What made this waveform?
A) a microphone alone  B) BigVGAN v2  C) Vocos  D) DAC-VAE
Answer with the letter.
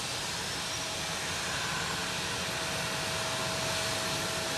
A